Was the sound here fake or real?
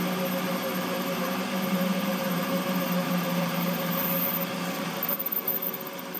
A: fake